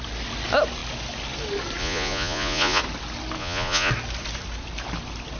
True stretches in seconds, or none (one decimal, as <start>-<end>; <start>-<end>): 0.0-1.8; 2.8-3.4; 3.9-5.4